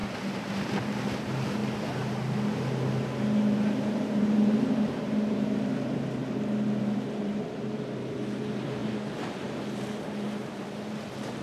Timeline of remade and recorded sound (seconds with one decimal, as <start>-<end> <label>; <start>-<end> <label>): 0.0-0.8 recorded; 0.8-1.6 remade; 1.6-4.2 recorded; 4.2-6.2 remade; 6.2-6.8 recorded; 6.8-11.4 remade